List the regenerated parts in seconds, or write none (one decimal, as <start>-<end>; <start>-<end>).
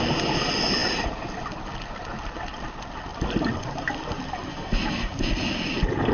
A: 4.5-5.1